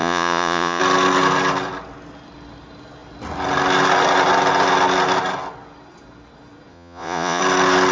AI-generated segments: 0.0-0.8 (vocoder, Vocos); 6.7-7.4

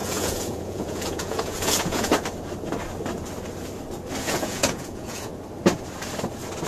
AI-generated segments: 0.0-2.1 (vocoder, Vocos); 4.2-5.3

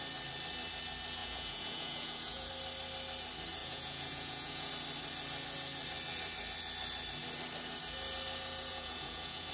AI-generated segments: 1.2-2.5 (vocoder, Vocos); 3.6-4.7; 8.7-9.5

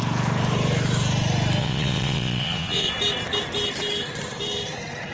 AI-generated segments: 1.6-2.9 (vocoder, Vocos)

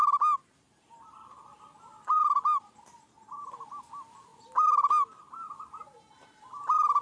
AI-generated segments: none

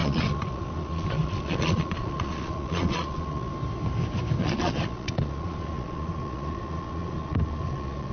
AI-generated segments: 0.0-3.5 (vocoder, Vocos); 4.4-8.1